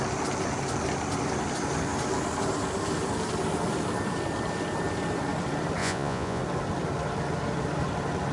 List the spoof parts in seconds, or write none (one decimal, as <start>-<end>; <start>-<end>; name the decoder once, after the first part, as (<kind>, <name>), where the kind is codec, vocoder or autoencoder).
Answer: 5.8-6.4 (vocoder, Vocos)